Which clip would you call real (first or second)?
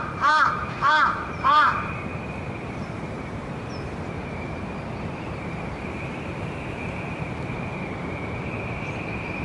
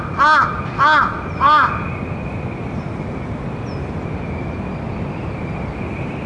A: second